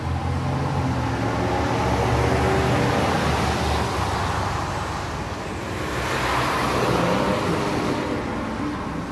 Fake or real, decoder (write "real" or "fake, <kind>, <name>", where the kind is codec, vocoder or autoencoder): real